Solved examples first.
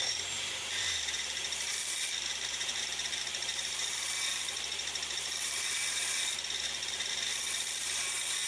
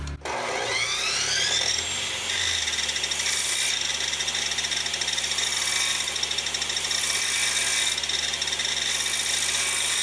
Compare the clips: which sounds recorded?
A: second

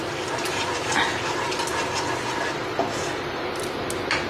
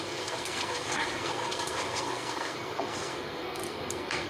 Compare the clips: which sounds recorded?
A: first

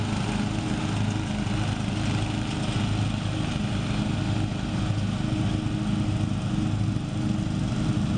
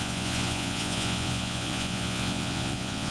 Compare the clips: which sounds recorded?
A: first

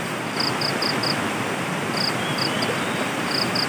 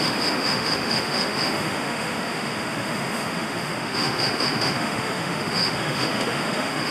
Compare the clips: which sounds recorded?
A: first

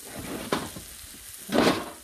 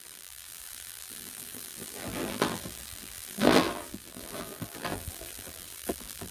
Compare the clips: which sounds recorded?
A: first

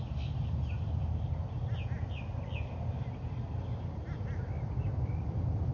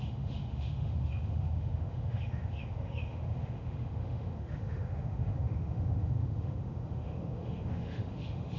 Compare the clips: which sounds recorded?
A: first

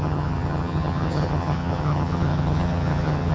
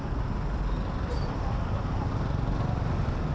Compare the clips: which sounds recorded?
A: second